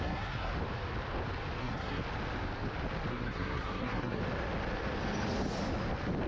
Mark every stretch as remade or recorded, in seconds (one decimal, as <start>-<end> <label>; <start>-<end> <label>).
0.0-0.5 remade; 0.5-1.6 recorded; 1.6-2.0 remade; 2.0-3.1 recorded; 3.1-4.2 remade; 4.2-6.3 recorded